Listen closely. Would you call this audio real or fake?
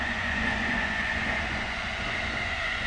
fake